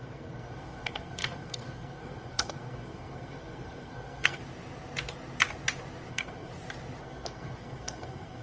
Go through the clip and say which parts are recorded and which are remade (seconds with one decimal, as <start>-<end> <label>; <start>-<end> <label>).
0.0-4.4 remade; 4.4-6.1 recorded; 6.1-6.5 remade; 6.5-7.0 recorded; 7.0-8.4 remade

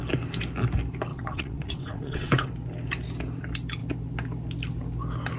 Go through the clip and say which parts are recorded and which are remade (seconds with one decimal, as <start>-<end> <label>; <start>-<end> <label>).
0.0-1.1 recorded; 1.1-2.5 remade; 2.5-5.4 recorded

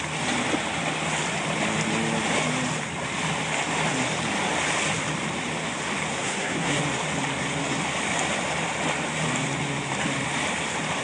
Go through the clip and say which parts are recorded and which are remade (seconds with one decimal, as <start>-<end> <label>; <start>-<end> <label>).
0.0-6.1 recorded; 6.1-6.8 remade; 6.8-11.0 recorded

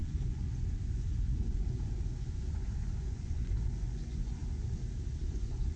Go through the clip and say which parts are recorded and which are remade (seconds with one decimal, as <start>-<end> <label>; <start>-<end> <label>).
0.0-4.4 remade; 4.4-5.3 recorded; 5.3-5.8 remade